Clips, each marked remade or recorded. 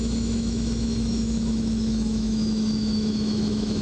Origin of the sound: remade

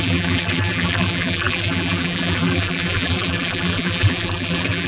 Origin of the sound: remade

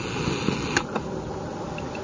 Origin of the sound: recorded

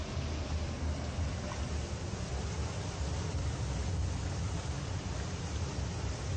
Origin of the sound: recorded